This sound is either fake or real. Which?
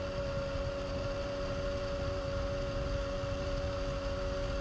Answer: real